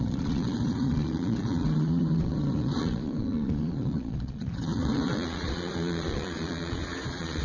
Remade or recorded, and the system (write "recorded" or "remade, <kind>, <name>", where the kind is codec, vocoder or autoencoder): remade, vocoder, Vocos